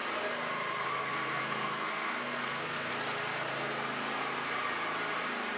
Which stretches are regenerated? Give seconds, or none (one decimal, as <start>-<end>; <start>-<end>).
1.0-2.9